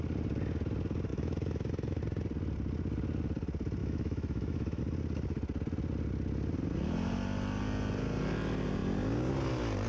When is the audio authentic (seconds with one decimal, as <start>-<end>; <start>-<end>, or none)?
0.0-1.1; 2.0-3.8; 4.8-9.9